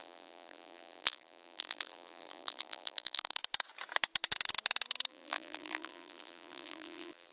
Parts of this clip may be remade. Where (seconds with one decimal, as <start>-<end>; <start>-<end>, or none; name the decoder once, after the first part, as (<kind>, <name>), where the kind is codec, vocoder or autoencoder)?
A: 0.0-3.4 (vocoder, BigVGAN v2); 5.1-7.3